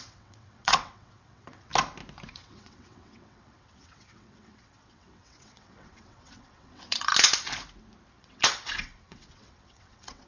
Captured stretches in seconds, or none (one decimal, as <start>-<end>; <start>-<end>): 1.7-2.3; 7.1-8.2